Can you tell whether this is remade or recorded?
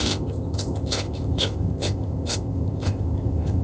remade